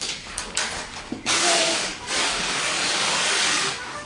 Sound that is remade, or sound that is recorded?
remade